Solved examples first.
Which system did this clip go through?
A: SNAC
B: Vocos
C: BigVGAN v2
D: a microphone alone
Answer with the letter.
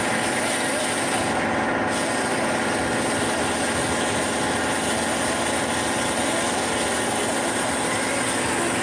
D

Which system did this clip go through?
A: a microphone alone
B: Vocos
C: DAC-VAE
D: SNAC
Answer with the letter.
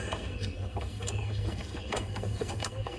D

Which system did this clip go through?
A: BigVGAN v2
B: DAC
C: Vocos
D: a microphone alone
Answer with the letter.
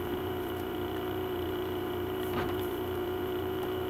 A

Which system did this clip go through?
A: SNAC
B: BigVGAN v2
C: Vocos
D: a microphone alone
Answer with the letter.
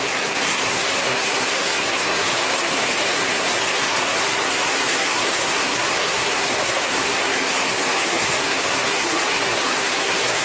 A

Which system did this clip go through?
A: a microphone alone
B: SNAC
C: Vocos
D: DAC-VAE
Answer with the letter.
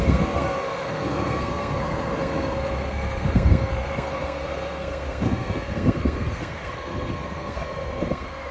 B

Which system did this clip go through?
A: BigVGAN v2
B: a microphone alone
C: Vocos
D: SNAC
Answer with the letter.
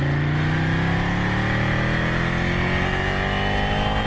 B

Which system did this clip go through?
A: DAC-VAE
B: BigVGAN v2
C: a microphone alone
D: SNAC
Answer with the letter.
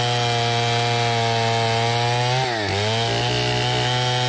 C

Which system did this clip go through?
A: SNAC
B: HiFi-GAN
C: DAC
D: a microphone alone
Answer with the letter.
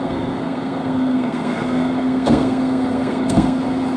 A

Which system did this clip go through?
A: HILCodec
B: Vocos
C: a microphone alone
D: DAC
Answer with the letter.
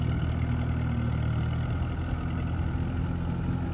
C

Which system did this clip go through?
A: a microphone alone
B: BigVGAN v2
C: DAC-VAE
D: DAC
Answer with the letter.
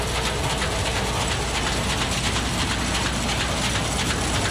A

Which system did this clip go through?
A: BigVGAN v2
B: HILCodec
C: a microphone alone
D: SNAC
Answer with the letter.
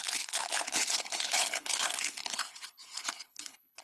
B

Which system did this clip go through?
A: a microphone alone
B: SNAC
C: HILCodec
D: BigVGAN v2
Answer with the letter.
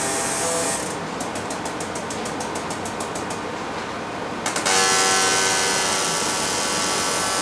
A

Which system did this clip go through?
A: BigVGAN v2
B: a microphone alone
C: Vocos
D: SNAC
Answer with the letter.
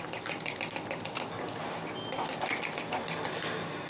B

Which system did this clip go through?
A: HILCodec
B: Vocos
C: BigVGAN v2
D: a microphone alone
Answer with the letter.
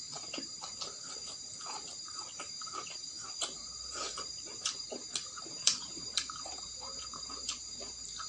C